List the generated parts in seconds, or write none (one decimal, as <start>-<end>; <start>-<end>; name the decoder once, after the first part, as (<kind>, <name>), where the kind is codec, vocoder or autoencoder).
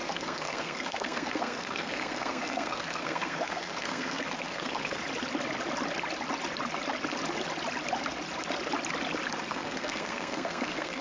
0.0-5.0 (codec, SNAC); 9.5-11.0